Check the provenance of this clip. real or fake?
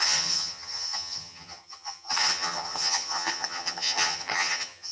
fake